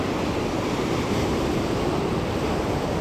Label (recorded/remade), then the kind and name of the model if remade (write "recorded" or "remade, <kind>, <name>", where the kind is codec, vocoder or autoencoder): recorded